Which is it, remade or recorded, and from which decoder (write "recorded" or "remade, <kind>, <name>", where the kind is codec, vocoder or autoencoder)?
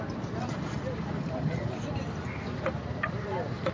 recorded